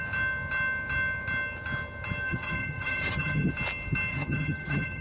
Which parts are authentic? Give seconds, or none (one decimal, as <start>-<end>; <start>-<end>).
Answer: 0.0-2.3; 3.5-4.1